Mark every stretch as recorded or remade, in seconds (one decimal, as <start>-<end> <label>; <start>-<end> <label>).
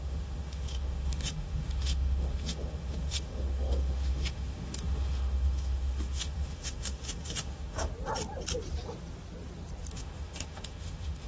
0.0-7.9 remade; 7.9-9.9 recorded; 9.9-11.3 remade